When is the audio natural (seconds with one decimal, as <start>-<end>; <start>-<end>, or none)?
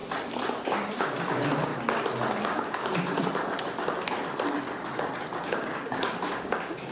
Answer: 0.0-1.0; 1.7-2.4; 2.9-5.4